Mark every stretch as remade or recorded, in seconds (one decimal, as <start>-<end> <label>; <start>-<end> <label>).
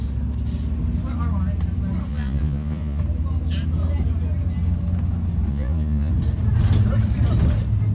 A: 0.0-2.1 recorded; 2.1-3.0 remade; 3.0-5.5 recorded; 5.5-6.1 remade; 6.1-7.9 recorded